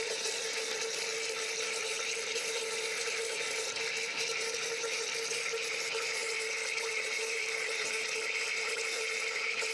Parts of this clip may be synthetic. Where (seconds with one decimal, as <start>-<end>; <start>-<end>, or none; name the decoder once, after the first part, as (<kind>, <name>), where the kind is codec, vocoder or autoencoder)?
none